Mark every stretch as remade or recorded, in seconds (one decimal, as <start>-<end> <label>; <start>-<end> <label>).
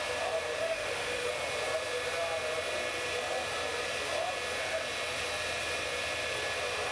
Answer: 0.0-0.5 recorded; 0.5-1.3 remade; 1.3-6.9 recorded